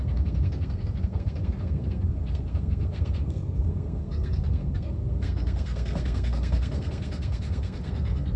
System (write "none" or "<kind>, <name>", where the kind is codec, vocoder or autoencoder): codec, SNAC